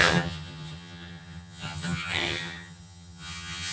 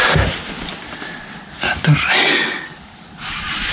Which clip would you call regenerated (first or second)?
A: first